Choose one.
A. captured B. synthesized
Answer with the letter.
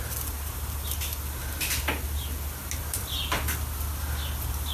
A